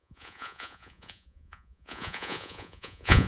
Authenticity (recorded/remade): remade